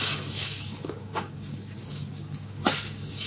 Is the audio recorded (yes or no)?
no